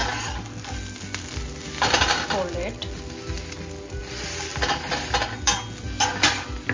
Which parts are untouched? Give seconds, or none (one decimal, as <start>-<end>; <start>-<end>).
0.0-6.7

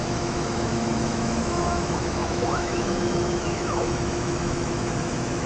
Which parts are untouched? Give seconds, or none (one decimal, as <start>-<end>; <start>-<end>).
none

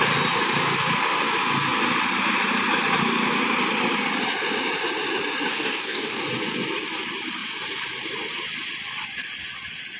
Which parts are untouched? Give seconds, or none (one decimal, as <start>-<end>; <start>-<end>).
0.0-5.5; 6.2-10.0